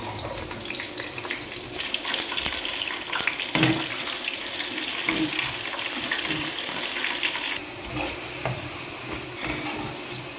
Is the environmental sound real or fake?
real